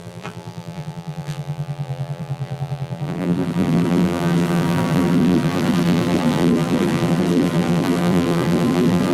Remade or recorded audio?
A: remade